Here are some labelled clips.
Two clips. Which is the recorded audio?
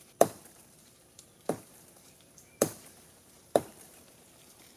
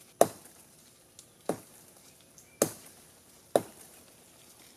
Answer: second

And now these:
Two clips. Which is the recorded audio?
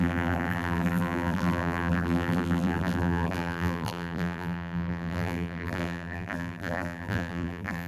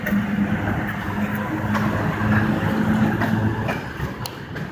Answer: second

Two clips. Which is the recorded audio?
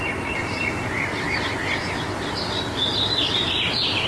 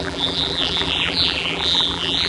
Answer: first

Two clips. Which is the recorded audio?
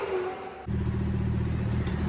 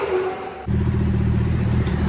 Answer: first